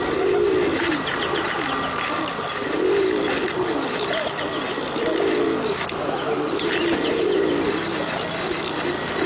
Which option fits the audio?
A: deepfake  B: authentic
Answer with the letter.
B